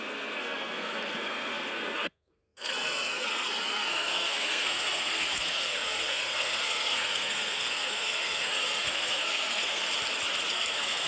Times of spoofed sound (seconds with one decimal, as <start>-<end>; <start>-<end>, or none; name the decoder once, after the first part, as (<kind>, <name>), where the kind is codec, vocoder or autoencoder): 0.0-9.8 (codec, SNAC); 10.5-11.1